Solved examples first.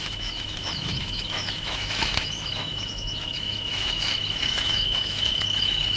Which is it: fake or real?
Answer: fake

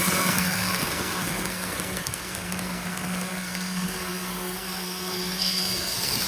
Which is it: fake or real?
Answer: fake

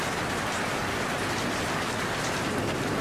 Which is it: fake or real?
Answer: real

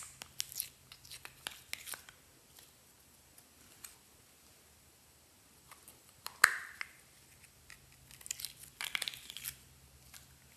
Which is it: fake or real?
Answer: real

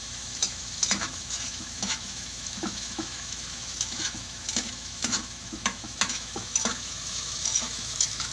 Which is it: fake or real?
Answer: fake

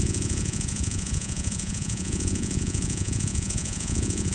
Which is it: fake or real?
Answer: fake